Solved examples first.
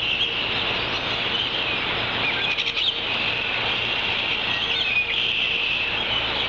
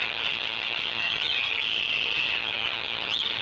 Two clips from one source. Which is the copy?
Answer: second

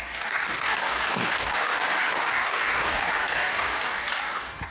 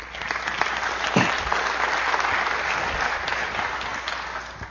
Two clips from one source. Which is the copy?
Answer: first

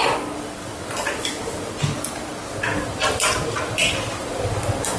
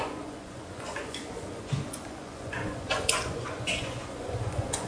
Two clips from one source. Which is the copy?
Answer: second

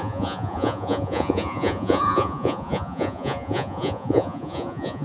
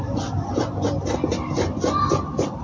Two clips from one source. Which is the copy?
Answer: first